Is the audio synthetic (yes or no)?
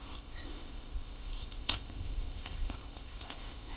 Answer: yes